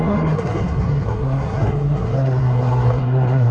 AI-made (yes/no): yes